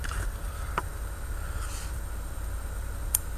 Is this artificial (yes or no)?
yes